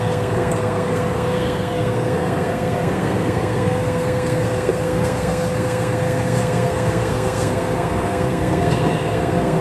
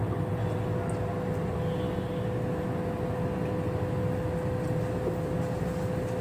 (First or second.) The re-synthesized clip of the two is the first